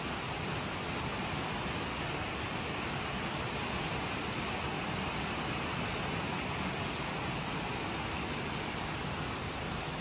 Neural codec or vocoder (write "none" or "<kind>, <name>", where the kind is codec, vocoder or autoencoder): none